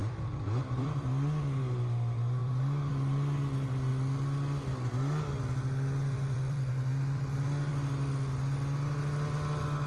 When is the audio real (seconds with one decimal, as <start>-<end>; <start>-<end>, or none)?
1.6-2.4; 2.9-6.0; 7.7-9.9